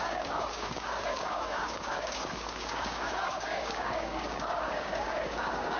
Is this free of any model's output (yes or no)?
no